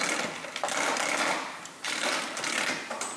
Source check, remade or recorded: recorded